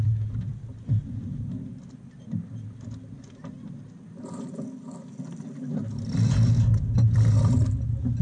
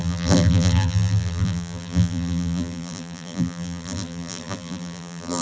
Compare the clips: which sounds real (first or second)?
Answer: first